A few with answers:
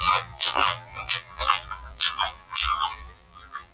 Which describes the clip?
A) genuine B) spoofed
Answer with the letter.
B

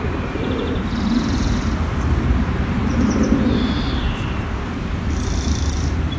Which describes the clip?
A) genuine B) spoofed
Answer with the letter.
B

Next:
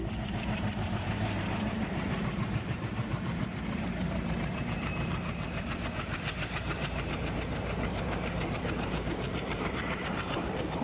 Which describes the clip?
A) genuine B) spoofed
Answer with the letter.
B